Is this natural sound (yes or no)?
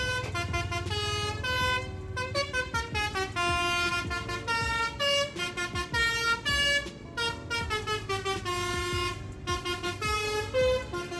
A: yes